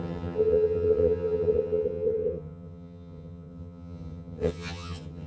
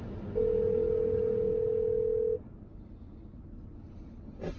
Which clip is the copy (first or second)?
first